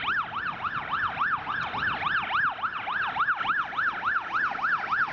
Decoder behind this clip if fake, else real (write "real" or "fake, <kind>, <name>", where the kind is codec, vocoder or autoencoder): real